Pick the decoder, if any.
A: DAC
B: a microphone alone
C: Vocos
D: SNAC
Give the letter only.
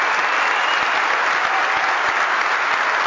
B